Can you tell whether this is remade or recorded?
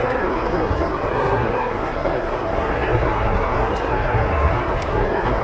remade